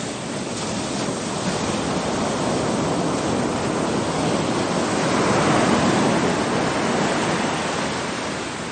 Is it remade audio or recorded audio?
recorded